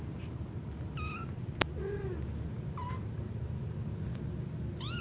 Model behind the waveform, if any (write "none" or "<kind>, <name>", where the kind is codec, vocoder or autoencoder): none